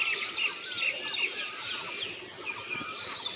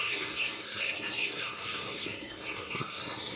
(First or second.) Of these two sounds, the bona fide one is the first